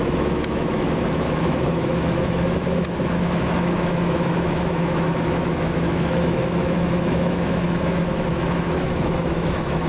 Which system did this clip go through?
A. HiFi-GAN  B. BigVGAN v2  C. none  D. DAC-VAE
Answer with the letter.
D